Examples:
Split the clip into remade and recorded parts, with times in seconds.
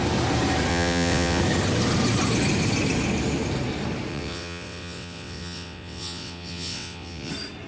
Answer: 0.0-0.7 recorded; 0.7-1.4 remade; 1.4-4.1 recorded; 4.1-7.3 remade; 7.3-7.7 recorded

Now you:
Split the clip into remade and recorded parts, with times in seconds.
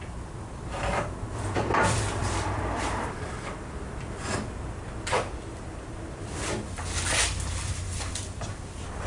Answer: 0.0-9.1 remade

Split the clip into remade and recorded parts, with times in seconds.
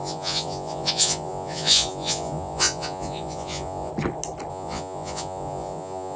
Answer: 0.0-3.9 remade; 3.9-4.5 recorded; 4.5-6.2 remade